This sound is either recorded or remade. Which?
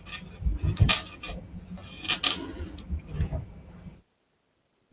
recorded